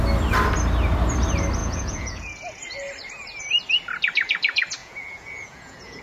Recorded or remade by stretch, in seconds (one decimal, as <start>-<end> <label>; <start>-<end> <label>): 0.0-1.6 recorded; 1.6-2.6 remade; 2.6-4.8 recorded; 4.8-6.0 remade